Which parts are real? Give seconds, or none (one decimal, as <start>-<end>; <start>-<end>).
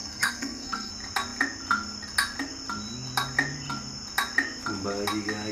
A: 0.9-5.5